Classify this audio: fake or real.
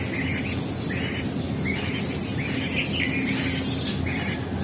real